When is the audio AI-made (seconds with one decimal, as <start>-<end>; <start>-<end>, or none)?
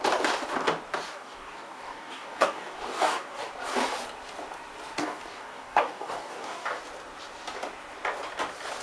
1.1-3.5; 5.0-6.8